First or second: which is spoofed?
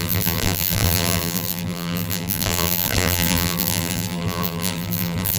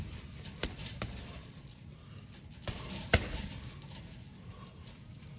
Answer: first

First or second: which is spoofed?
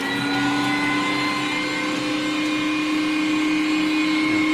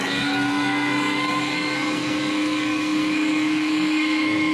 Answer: second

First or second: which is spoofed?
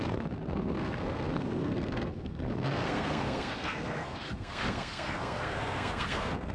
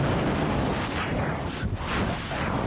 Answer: first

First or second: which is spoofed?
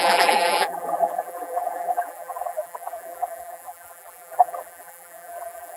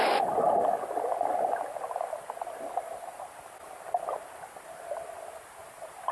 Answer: first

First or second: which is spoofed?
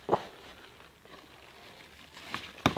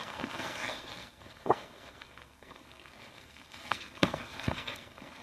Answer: second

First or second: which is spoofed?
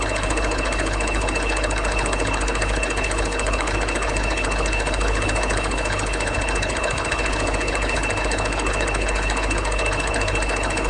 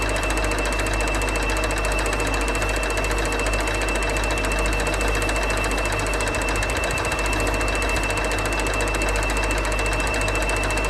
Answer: first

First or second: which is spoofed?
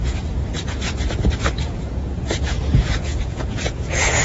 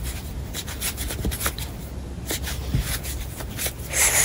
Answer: first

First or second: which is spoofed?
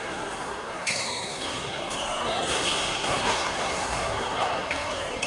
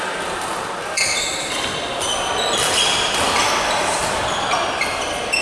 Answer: first